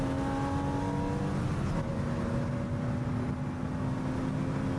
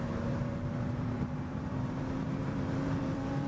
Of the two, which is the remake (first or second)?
second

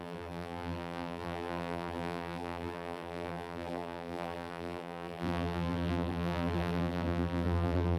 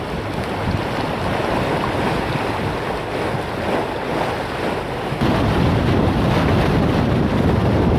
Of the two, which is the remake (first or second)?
first